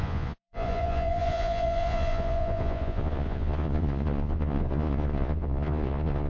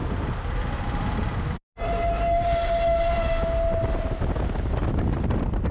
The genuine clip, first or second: second